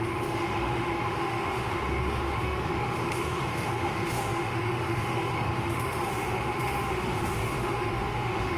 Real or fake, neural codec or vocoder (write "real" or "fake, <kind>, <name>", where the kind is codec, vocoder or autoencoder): fake, autoencoder, DAC-VAE